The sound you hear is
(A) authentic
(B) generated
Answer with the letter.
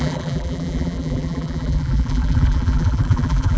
B